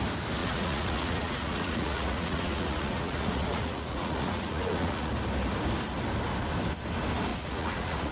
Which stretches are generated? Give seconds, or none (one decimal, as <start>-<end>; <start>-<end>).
0.4-5.1; 7.3-8.1